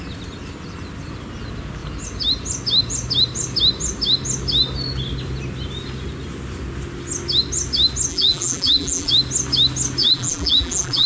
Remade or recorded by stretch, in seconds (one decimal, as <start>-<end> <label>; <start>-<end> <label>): 0.0-8.1 recorded; 8.1-9.1 remade; 9.1-10.0 recorded; 10.0-11.1 remade